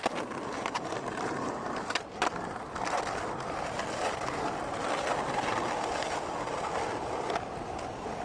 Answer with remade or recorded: recorded